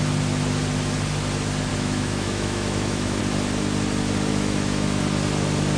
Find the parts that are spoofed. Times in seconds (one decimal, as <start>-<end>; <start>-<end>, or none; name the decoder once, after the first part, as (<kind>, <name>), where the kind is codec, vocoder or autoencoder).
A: 1.7-3.2 (autoencoder, DAC-VAE); 4.3-5.0